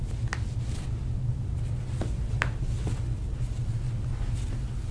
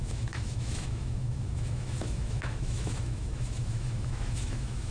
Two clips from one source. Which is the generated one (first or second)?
second